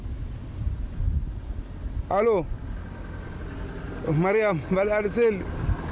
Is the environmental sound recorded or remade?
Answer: recorded